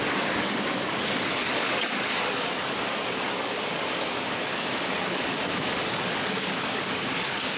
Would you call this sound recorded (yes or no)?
no